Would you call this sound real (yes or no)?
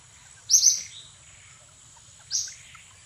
yes